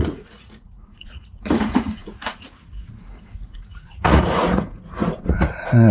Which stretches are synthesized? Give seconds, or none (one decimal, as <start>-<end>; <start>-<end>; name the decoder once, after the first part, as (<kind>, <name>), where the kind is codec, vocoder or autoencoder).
0.0-5.9 (vocoder, Vocos)